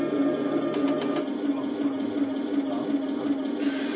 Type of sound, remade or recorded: recorded